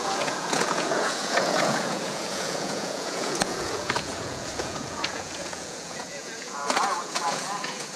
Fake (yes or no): yes